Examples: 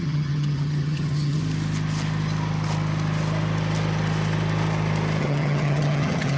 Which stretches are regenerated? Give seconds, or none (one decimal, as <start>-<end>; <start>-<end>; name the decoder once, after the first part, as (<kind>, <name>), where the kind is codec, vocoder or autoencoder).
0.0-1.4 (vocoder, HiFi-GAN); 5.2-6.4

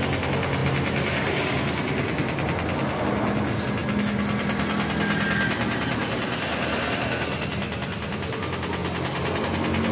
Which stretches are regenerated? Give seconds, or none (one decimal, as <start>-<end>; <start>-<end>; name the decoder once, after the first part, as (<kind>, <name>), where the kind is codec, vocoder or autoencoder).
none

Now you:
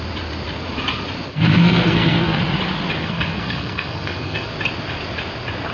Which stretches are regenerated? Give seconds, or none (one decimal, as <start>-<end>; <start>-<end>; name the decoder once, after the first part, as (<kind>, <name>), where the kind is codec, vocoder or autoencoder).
1.3-2.4 (codec, SNAC); 3.0-4.5

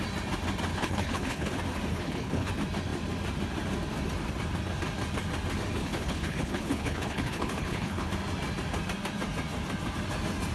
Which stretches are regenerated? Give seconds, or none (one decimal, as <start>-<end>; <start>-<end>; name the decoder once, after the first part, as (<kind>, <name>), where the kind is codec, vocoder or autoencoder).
0.7-1.5 (codec, HILCodec); 1.9-2.5; 5.8-8.1